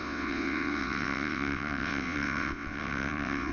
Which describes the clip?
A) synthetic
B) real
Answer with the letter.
A